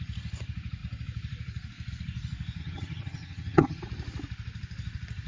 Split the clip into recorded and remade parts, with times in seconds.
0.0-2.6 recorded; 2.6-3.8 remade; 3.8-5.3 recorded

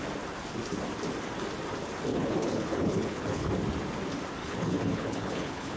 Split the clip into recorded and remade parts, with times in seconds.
0.0-2.1 recorded; 2.1-3.5 remade; 3.5-4.4 recorded; 4.4-5.8 remade

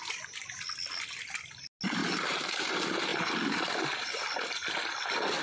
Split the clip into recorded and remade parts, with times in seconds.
0.0-2.0 recorded; 2.0-2.7 remade; 2.7-5.4 recorded

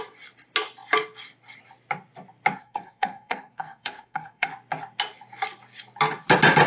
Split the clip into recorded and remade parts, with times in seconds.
0.0-2.6 recorded; 2.6-4.5 remade; 4.5-6.7 recorded